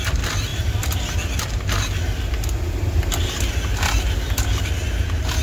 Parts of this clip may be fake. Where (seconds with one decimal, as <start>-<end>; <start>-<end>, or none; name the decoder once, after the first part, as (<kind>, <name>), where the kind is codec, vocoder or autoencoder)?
none